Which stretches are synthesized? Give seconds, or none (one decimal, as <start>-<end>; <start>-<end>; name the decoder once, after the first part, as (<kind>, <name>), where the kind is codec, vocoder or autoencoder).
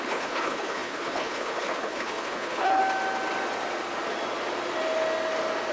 0.0-2.8 (codec, HILCodec)